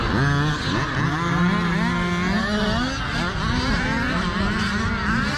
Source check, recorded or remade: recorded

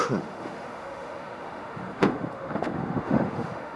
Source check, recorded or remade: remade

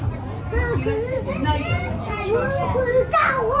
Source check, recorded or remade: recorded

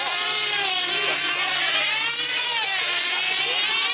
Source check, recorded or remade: recorded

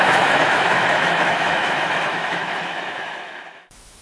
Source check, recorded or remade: remade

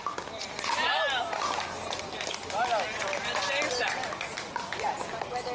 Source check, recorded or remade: recorded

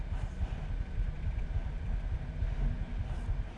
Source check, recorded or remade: recorded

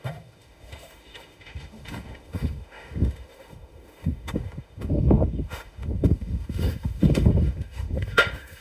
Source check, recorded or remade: remade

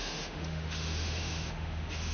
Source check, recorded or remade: remade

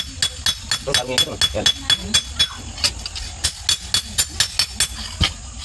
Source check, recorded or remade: recorded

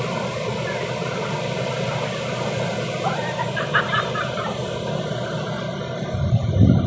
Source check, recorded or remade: recorded